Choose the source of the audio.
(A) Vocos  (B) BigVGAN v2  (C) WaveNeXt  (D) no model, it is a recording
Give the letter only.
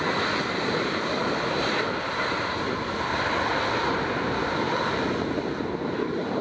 D